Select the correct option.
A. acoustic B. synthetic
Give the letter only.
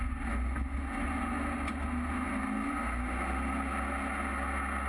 A